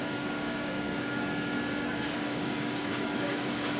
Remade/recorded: remade